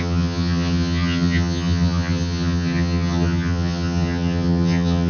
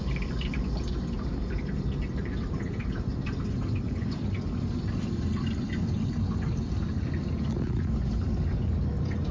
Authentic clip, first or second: second